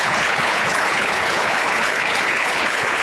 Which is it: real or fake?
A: fake